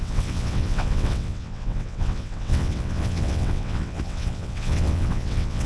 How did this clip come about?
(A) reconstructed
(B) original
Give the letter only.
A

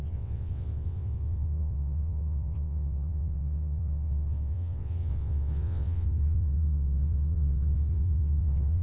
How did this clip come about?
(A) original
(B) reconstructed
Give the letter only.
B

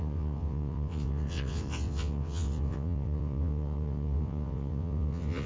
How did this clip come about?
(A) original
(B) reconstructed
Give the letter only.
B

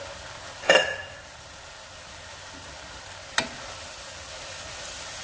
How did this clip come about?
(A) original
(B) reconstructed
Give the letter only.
A